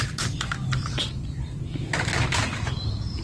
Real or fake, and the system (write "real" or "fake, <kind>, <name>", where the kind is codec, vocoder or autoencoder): real